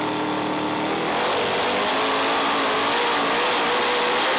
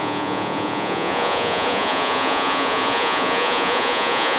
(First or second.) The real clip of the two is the first